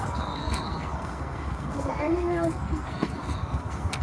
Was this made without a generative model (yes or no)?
no